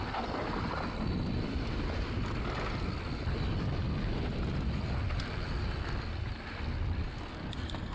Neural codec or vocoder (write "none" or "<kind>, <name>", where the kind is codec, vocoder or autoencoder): none